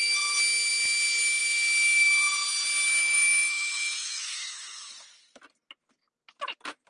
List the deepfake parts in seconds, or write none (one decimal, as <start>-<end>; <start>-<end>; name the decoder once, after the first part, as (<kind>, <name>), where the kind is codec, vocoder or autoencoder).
3.0-4.9 (autoencoder, DAC-VAE)